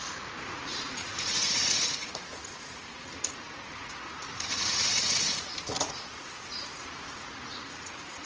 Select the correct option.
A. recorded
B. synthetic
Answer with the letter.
B